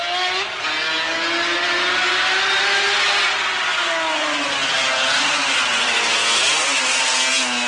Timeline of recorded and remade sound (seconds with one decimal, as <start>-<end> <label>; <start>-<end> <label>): 0.0-7.7 recorded